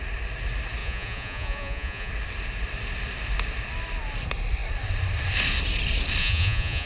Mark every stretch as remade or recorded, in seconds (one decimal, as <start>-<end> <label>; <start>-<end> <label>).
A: 0.0-0.8 recorded; 0.8-2.1 remade; 2.1-6.2 recorded; 6.2-6.9 remade